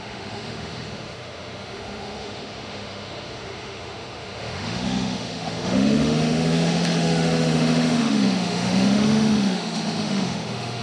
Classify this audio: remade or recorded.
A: remade